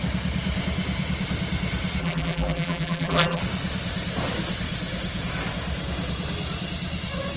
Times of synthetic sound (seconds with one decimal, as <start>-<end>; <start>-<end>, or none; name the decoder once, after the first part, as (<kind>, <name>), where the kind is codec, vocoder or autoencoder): 2.0-3.4 (vocoder, BigVGAN v2)